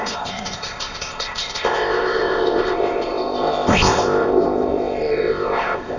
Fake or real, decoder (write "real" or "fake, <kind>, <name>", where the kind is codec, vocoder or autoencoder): fake, codec, ZipCodec